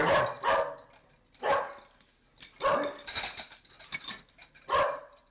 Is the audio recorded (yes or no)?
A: yes